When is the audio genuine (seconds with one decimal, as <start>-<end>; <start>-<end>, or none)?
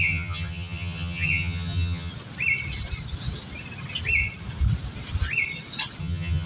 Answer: 2.1-6.0